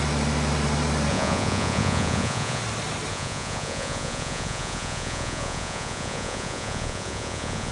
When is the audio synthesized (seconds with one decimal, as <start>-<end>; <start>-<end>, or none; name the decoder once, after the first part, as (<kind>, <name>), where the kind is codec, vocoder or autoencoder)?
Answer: 1.1-2.6 (vocoder, Vocos); 3.1-7.7

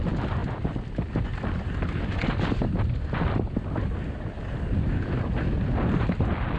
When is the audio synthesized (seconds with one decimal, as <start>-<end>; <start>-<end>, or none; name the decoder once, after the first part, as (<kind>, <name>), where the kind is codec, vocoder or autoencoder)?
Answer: none

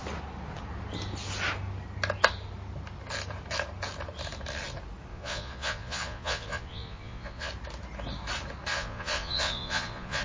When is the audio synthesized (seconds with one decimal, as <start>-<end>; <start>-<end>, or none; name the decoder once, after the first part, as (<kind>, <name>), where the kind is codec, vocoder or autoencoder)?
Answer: 5.1-7.5 (vocoder, Vocos); 8.7-10.2

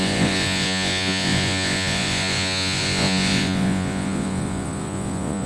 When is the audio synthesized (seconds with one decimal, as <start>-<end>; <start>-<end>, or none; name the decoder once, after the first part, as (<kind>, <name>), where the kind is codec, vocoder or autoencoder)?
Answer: 0.0-5.5 (vocoder, Vocos)

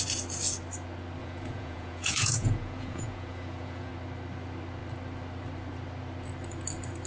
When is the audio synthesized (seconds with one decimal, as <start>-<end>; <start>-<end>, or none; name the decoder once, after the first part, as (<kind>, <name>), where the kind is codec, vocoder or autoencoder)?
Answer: 1.2-3.9 (vocoder, Vocos)

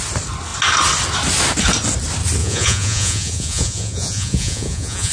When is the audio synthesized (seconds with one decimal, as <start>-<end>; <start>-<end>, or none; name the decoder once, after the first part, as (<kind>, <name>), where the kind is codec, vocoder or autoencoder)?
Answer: 2.4-5.1 (vocoder, Vocos)

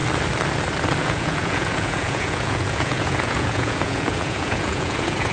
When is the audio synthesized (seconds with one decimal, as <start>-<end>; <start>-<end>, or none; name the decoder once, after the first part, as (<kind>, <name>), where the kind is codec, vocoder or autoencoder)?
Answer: 1.0-5.3 (vocoder, Vocos)

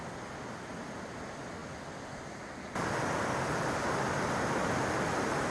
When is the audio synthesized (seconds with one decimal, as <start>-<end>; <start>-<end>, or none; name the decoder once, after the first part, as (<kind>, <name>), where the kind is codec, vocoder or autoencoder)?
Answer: none